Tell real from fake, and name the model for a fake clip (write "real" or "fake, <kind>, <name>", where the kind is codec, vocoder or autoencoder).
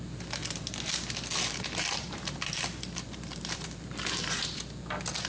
fake, vocoder, BigVGAN v2